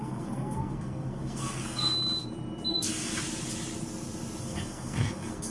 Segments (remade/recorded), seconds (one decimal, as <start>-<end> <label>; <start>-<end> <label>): 0.0-1.9 remade; 1.9-2.7 recorded; 2.7-3.1 remade; 3.1-4.4 recorded; 4.4-5.5 remade